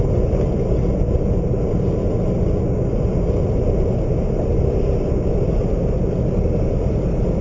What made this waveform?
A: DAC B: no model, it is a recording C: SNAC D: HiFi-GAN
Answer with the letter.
B